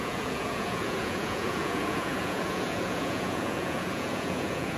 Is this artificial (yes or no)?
yes